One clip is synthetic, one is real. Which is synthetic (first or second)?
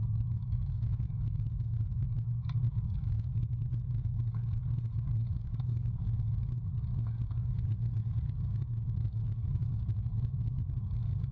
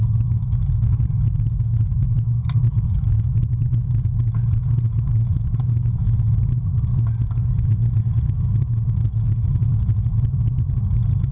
first